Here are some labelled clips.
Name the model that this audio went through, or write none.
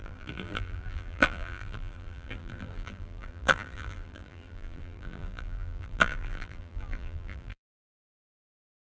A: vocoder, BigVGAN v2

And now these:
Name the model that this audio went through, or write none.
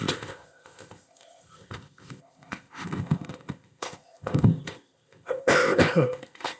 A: codec, ZipCodec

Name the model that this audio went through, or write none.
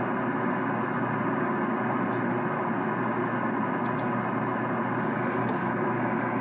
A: none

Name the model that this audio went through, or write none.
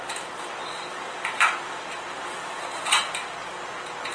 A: vocoder, BigVGAN v2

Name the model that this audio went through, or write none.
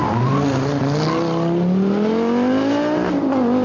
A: none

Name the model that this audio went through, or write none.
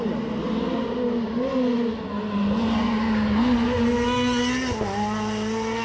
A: none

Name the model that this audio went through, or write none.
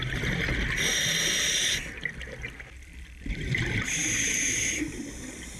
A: none